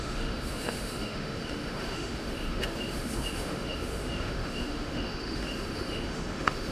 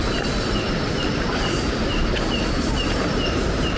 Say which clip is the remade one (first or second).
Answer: first